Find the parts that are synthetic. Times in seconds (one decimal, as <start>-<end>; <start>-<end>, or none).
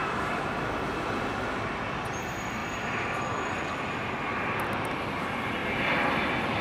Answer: 0.0-1.3